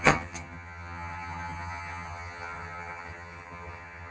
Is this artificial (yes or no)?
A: yes